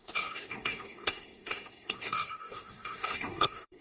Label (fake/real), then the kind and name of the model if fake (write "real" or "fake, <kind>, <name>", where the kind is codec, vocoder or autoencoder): fake, codec, SNAC